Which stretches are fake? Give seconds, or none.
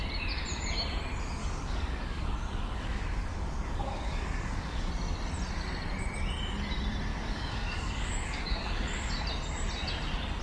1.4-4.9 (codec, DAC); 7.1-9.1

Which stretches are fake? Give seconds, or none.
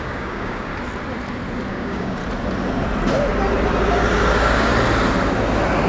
0.0-0.7 (codec, DAC); 1.7-2.2; 4.3-4.7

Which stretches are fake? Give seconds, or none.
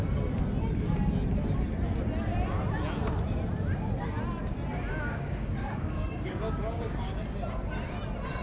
4.9-7.1 (codec, DAC)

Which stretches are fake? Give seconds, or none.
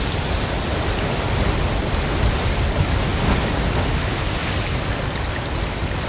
none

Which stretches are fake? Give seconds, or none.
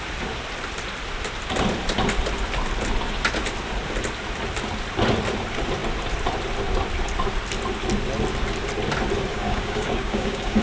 9.3-10.6 (codec, DAC)